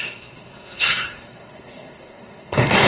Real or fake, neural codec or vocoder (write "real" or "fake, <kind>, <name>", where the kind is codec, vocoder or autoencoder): fake, codec, SNAC